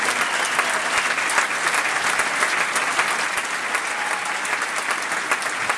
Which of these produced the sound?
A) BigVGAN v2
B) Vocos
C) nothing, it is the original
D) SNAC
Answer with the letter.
C